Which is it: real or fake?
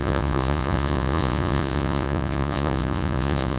fake